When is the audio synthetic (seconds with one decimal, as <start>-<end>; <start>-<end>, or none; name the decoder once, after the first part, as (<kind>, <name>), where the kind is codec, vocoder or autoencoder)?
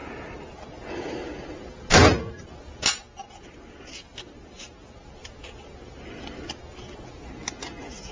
none